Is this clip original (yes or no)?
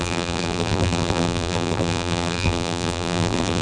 no